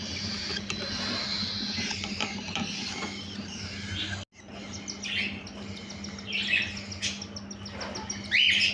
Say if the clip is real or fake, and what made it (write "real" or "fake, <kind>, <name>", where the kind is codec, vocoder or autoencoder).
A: real